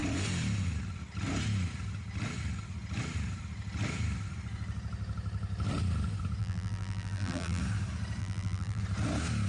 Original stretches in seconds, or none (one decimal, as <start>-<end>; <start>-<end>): 0.0-6.4; 7.6-8.2; 8.8-9.5